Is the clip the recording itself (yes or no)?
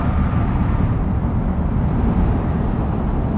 yes